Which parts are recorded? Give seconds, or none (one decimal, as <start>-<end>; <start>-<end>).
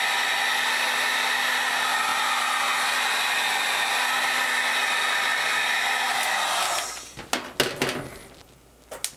0.0-9.2